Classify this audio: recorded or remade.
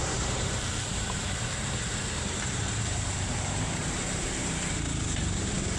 remade